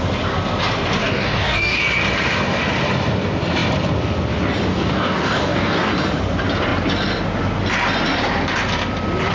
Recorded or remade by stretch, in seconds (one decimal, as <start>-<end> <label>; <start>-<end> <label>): 0.0-1.0 recorded; 1.0-1.8 remade; 1.8-4.7 recorded; 4.7-5.9 remade; 5.9-9.3 recorded